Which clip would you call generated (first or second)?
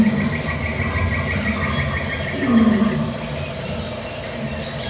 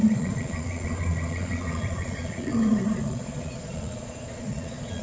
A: second